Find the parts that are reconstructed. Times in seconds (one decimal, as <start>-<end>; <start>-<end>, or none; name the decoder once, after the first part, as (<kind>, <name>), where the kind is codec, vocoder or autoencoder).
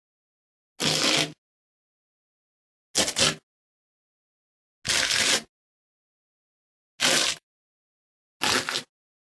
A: none